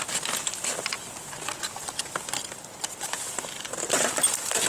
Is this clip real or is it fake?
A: fake